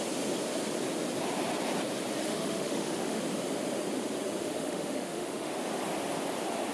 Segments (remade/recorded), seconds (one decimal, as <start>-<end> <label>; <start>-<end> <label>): 0.0-2.2 recorded; 2.2-3.2 remade; 3.2-4.4 recorded; 4.4-5.5 remade; 5.5-6.7 recorded